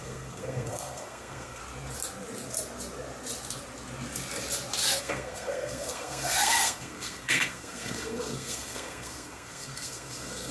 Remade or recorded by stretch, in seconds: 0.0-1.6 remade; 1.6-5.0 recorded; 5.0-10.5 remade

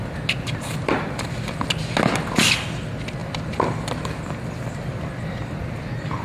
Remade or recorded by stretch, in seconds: 0.0-3.2 recorded; 3.2-6.2 remade

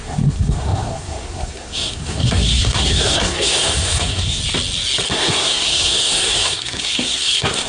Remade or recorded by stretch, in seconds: 0.0-4.4 remade; 4.4-5.1 recorded; 5.1-7.7 remade

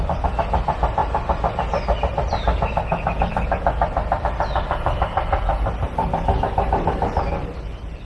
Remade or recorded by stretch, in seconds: 0.0-8.0 recorded